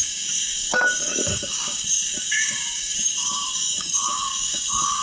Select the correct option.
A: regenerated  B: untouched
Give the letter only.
A